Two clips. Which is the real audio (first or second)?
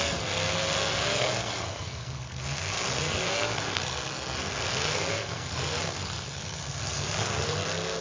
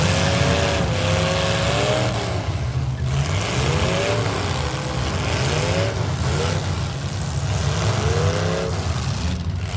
second